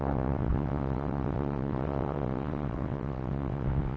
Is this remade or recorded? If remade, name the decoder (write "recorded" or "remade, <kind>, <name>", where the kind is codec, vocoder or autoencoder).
remade, vocoder, WaveNeXt